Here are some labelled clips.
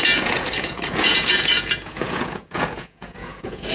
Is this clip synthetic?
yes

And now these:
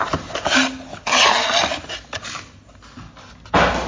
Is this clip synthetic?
no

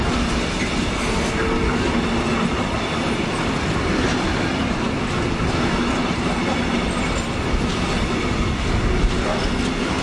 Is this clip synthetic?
no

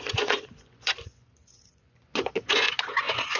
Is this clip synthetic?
yes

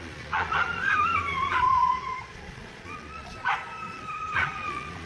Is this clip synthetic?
yes